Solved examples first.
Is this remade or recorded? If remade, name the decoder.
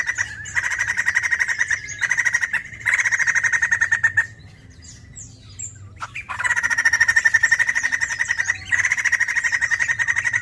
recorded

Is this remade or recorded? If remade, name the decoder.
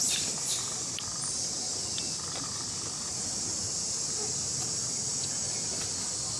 recorded